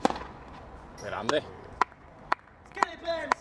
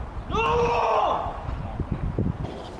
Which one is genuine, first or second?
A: second